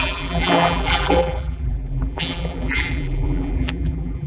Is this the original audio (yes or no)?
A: no